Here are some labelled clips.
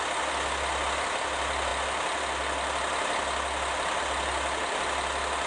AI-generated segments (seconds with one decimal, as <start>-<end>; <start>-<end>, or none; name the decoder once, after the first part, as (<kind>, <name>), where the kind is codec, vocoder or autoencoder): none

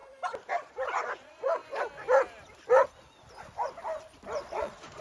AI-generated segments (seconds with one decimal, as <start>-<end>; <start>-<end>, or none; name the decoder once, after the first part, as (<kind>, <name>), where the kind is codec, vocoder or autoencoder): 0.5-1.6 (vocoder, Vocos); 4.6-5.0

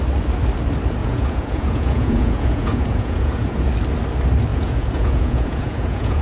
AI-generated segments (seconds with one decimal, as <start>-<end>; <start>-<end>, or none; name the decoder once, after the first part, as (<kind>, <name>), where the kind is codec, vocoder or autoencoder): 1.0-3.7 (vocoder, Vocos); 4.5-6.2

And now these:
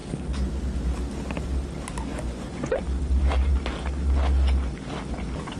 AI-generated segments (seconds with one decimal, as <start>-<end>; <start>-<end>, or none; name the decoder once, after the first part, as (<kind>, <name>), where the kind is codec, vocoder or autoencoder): 2.1-2.8 (vocoder, Vocos)

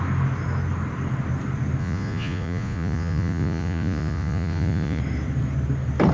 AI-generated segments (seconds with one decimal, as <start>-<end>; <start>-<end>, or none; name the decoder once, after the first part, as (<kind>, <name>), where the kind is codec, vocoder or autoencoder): 1.8-5.0 (vocoder, Vocos)